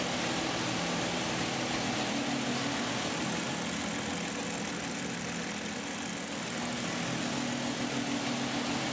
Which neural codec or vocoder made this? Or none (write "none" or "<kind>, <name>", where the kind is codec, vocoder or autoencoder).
none